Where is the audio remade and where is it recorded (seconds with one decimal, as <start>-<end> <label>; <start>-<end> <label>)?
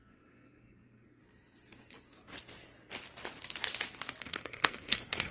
0.0-1.2 remade; 1.2-4.2 recorded; 4.2-5.3 remade